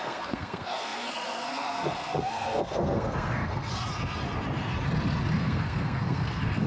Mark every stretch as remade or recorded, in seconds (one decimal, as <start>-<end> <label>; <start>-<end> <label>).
0.0-3.7 remade; 3.7-5.4 recorded; 5.4-6.7 remade